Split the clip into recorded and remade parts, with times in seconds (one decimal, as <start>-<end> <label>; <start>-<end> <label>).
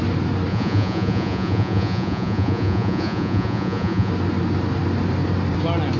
0.0-0.5 recorded; 0.5-4.1 remade; 4.1-6.0 recorded